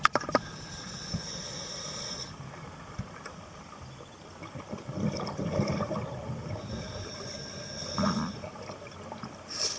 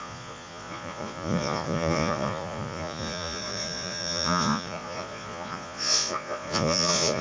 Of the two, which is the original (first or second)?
first